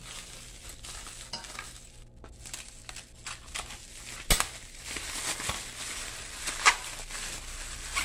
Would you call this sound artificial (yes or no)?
no